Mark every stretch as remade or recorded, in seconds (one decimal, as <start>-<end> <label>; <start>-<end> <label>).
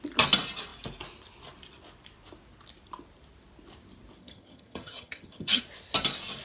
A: 0.0-4.2 recorded; 4.2-5.6 remade; 5.6-6.4 recorded